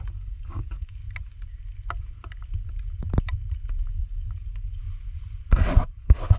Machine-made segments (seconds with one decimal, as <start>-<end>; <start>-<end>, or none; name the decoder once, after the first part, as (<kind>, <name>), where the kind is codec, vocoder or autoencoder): 0.0-1.0 (codec, DAC); 3.9-4.8; 5.7-6.4